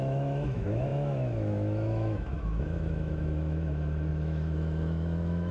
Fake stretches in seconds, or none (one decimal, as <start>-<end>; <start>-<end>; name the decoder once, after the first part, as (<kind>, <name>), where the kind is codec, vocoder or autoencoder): 0.0-5.5 (autoencoder, DAC-VAE)

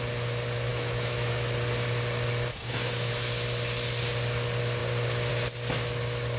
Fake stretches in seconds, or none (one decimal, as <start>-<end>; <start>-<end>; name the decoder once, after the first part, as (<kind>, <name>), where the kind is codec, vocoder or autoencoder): 0.7-1.3 (autoencoder, DAC-VAE); 2.5-3.1

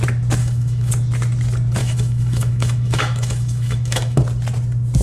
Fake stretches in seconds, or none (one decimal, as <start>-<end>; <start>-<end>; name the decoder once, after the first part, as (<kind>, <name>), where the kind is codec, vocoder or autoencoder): 0.4-0.9 (autoencoder, DAC-VAE); 1.8-4.2

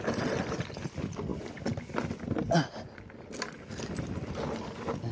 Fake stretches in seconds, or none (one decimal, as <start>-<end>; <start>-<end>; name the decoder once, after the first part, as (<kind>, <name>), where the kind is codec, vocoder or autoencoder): none

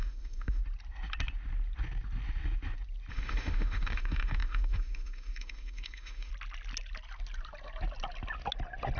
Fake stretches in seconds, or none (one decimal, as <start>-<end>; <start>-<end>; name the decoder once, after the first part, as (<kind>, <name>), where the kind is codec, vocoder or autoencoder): 0.0-0.6 (autoencoder, DAC-VAE); 3.1-6.3

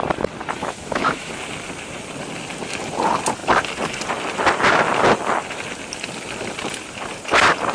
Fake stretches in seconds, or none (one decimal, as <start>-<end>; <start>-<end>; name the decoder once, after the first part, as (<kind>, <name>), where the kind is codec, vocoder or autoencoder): 0.6-1.3 (autoencoder, DAC-VAE)